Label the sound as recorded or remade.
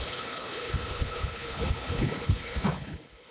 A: remade